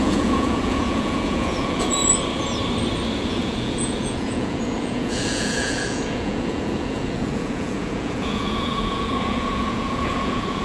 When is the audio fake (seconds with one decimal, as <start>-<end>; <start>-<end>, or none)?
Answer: 0.0-2.0; 3.2-10.6